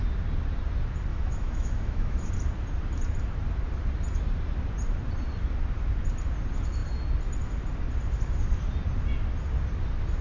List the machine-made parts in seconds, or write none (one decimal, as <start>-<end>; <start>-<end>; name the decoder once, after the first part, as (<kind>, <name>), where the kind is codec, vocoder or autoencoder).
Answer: 1.1-2.3 (autoencoder, DAC-VAE)